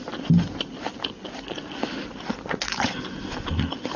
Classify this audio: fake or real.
real